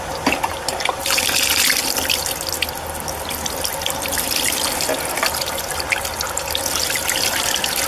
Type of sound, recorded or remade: recorded